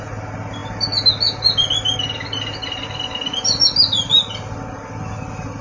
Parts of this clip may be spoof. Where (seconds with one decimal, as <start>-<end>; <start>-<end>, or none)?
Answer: none